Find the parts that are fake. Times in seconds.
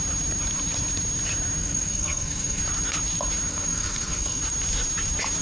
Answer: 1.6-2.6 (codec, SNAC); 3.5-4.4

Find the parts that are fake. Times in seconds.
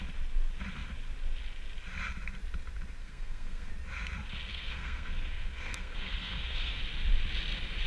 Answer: 3.0-3.7 (codec, SNAC); 4.5-6.8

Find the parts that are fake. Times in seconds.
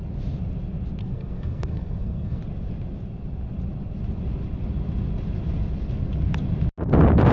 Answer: 1.0-2.4 (codec, SNAC)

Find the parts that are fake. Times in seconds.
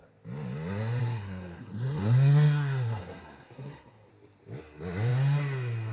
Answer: 1.0-4.1 (codec, SNAC)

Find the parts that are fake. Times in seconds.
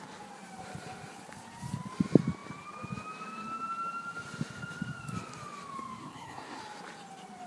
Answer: 6.0-6.6 (codec, SNAC)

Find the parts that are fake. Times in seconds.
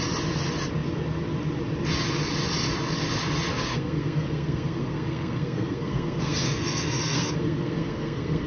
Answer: 3.5-8.5 (codec, SNAC)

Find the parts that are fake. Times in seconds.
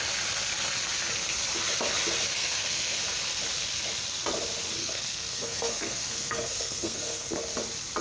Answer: 2.3-3.0 (codec, SNAC); 4.8-7.3